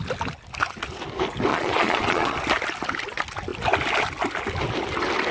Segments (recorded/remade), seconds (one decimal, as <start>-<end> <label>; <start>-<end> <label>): 0.0-1.5 recorded; 1.5-2.4 remade; 2.4-5.3 recorded